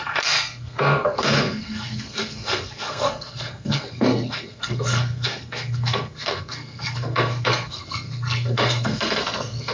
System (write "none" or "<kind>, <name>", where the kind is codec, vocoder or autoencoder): codec, SNAC